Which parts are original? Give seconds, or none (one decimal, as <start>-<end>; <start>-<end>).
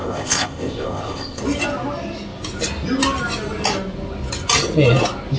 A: 1.4-5.4